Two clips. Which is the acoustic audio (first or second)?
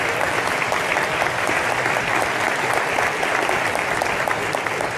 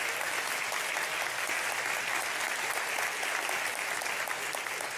second